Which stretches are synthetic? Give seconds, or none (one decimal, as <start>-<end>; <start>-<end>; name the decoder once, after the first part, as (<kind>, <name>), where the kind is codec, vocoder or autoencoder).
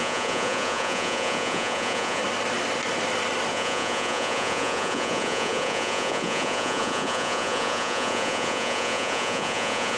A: 0.0-2.2 (vocoder, Vocos); 3.5-10.0